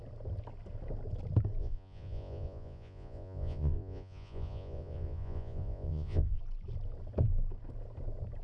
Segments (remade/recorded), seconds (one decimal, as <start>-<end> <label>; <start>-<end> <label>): 0.0-1.6 recorded; 1.6-6.4 remade; 6.4-8.4 recorded